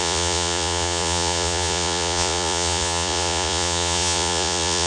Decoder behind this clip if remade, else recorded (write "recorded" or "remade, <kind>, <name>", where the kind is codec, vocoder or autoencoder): remade, vocoder, Vocos